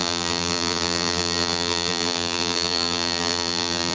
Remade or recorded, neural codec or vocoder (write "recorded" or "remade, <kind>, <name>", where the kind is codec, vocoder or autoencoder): remade, vocoder, BigVGAN v2